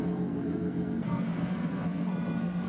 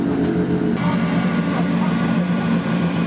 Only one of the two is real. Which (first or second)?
second